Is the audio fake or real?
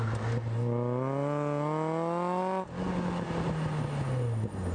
real